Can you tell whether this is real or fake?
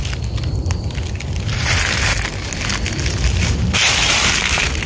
real